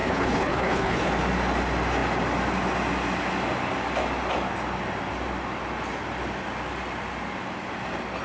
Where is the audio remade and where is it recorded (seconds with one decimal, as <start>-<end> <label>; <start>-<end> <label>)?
0.0-1.1 remade; 1.1-8.2 recorded